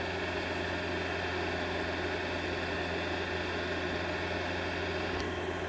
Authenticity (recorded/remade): recorded